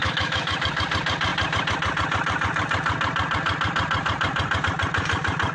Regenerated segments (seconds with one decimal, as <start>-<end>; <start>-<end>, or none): 0.0-0.6